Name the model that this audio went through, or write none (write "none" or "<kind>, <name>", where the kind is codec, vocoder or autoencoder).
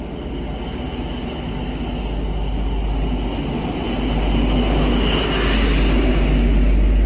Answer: none